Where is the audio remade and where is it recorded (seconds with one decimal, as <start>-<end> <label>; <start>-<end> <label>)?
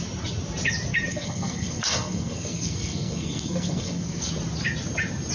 0.0-1.1 recorded; 1.1-4.3 remade; 4.3-5.3 recorded